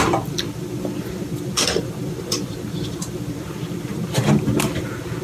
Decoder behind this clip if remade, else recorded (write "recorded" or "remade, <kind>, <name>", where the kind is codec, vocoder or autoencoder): remade, vocoder, BigVGAN v2